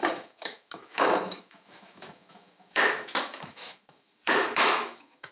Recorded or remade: remade